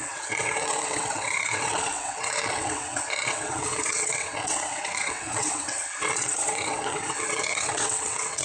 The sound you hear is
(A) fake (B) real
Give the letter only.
A